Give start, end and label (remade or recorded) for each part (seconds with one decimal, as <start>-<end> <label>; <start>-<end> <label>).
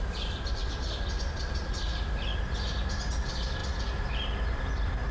0.0-0.6 recorded; 0.6-2.7 remade; 2.7-3.6 recorded; 3.6-5.1 remade